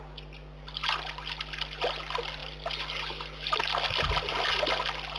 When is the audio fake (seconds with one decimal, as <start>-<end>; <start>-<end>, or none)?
none